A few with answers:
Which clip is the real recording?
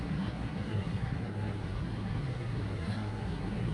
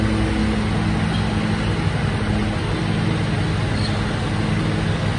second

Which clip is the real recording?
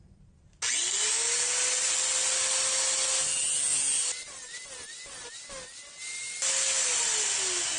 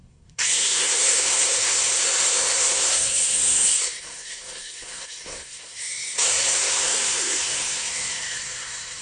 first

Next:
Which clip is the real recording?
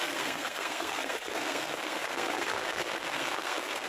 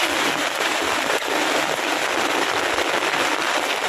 second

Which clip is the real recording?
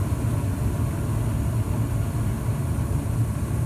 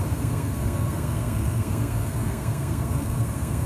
first